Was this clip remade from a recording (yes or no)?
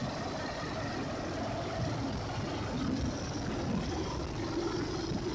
yes